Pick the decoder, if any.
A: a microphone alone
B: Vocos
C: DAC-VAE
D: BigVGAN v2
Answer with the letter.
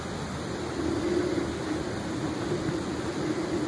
A